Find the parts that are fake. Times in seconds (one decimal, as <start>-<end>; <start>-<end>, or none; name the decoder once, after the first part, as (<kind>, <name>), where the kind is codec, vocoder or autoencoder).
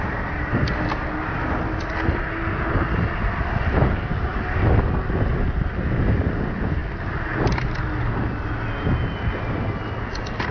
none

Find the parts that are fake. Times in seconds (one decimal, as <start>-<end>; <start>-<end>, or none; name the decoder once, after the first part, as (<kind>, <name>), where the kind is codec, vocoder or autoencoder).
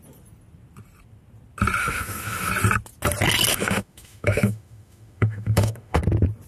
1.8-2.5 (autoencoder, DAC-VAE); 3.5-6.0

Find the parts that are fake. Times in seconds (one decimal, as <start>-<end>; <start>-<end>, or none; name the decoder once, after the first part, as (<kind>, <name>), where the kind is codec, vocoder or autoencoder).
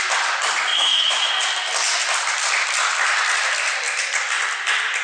0.7-1.3 (autoencoder, DAC-VAE)